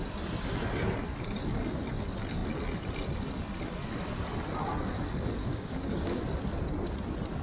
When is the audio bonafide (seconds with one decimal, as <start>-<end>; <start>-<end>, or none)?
0.0-5.4; 6.2-7.4